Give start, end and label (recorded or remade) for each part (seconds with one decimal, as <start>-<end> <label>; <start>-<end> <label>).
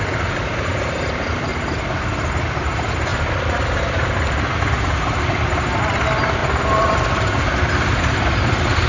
0.0-1.5 recorded; 1.5-2.4 remade; 2.4-3.1 recorded; 3.1-5.8 remade; 5.8-6.4 recorded; 6.4-7.4 remade; 7.4-8.9 recorded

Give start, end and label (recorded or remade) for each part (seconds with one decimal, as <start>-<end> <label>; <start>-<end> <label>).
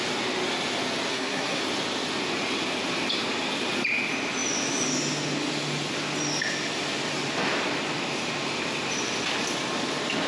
0.0-1.1 recorded; 1.1-1.6 remade; 1.6-10.3 recorded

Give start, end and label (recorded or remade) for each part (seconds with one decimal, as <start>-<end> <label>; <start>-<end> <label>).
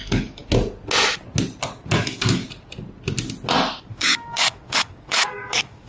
0.0-0.4 remade; 0.4-2.0 recorded; 2.0-2.4 remade; 2.4-3.9 recorded; 3.9-5.9 remade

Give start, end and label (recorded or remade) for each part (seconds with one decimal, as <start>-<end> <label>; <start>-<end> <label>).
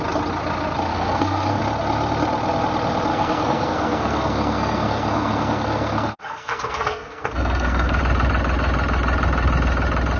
0.0-0.9 recorded; 0.9-1.6 remade; 1.6-3.1 recorded; 3.1-8.0 remade; 8.0-10.2 recorded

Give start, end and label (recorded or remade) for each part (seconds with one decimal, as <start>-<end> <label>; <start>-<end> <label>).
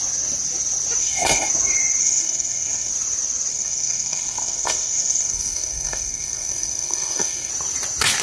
0.0-1.0 recorded; 1.0-1.5 remade; 1.5-2.0 recorded; 2.0-2.9 remade; 2.9-3.5 recorded; 3.5-7.5 remade; 7.5-8.2 recorded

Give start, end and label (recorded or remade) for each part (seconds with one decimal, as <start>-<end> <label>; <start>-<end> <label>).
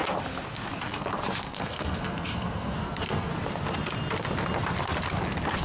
0.0-1.4 recorded; 1.4-3.3 remade; 3.3-5.6 recorded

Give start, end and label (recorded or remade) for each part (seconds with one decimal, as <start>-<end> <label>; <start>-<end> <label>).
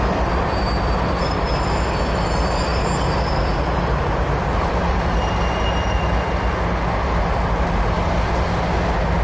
0.0-9.2 recorded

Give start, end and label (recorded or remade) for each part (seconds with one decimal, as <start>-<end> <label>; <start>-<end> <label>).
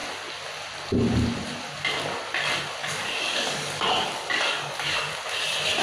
0.0-2.8 recorded; 2.8-5.1 remade; 5.1-5.8 recorded